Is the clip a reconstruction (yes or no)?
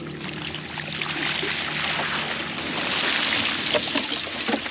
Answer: no